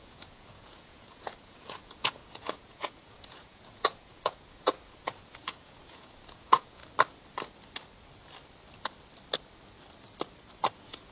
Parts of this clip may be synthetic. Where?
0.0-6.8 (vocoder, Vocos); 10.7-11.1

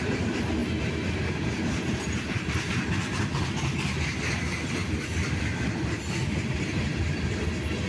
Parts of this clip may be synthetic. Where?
none